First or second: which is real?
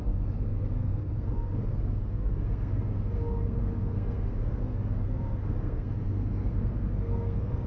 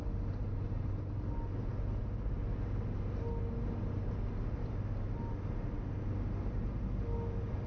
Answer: second